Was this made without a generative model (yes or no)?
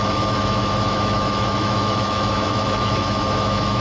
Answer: no